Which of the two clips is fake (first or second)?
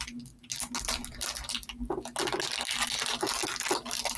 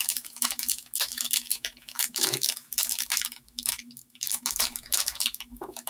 second